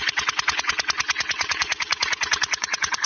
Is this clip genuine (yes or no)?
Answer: no